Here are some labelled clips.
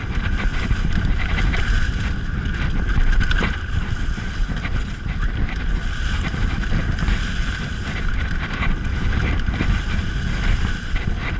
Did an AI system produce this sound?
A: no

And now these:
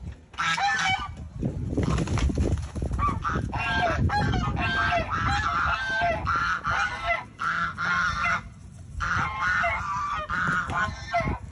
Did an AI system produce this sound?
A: no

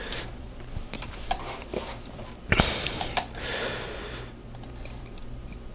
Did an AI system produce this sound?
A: yes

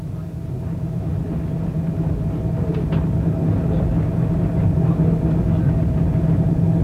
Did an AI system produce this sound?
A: no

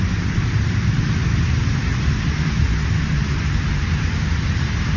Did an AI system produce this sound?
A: yes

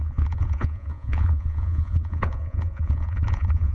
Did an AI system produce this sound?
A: yes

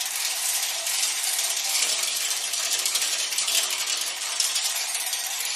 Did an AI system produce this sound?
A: yes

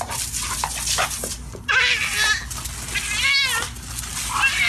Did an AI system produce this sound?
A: no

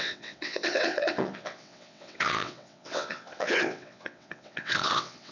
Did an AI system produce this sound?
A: yes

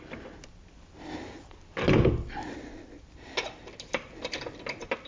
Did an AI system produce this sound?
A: no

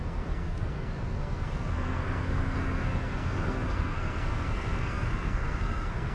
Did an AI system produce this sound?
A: yes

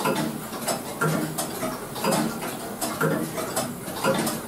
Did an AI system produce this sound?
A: no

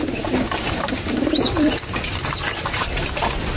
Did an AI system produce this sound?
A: yes